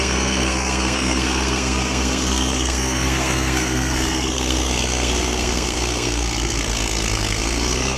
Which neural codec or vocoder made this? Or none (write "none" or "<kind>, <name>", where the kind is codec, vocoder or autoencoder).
codec, SNAC